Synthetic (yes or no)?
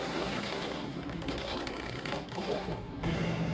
yes